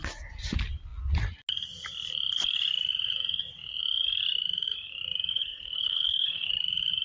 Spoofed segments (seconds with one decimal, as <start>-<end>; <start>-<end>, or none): 5.3-6.5